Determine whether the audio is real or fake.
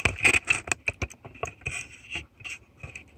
real